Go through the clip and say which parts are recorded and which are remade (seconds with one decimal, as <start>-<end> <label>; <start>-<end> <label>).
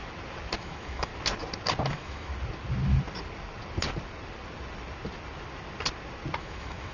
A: 0.0-0.6 recorded; 0.6-1.1 remade; 1.1-1.9 recorded; 1.9-2.3 remade; 2.3-6.4 recorded; 6.4-6.9 remade